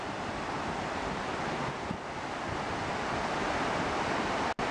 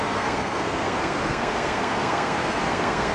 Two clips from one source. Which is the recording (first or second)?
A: first